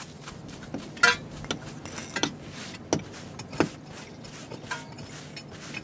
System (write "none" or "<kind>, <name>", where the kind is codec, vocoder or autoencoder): none